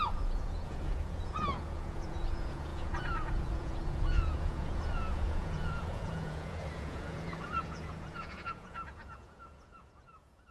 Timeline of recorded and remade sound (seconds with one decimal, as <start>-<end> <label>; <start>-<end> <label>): 0.0-10.5 remade